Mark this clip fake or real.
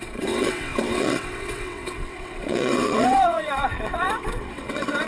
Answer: fake